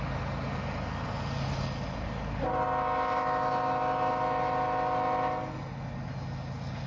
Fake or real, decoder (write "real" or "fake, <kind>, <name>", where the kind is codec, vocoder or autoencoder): real